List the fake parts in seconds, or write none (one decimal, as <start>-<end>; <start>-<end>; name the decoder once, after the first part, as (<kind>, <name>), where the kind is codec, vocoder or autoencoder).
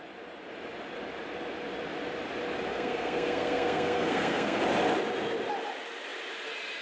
2.7-4.6 (codec, SNAC)